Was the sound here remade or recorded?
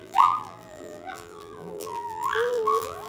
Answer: remade